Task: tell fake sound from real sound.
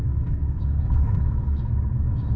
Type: fake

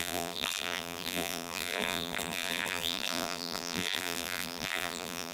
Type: fake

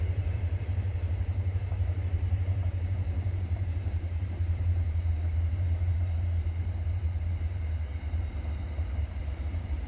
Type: fake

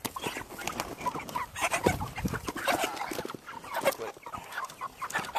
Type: real